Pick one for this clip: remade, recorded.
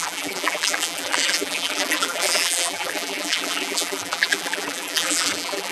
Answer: remade